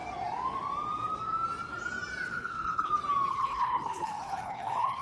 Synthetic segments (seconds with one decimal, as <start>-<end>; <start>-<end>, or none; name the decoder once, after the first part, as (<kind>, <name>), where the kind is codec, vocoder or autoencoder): 2.3-2.9 (codec, HILCodec); 3.3-5.0